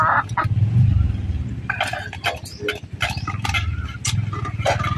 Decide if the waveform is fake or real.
real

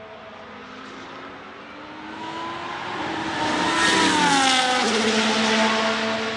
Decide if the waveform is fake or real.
real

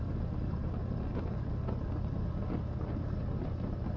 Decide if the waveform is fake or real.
real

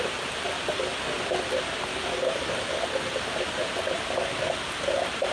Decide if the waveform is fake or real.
real